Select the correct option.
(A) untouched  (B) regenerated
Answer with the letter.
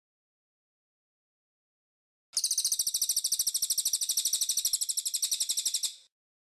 A